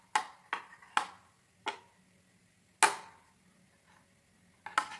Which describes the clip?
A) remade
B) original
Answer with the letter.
B